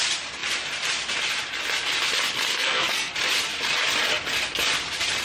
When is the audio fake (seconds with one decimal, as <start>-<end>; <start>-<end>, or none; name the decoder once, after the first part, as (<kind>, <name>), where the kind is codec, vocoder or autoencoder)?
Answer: 2.5-3.1 (codec, SNAC)